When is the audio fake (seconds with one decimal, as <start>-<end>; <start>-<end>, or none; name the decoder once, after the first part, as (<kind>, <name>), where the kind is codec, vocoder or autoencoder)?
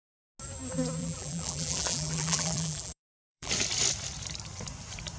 1.0-3.5 (vocoder, BigVGAN v2)